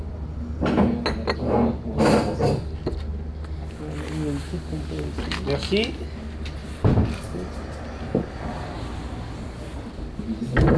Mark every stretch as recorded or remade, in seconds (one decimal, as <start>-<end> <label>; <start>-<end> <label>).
0.0-10.8 recorded